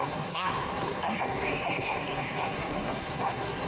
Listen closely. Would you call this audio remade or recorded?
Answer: remade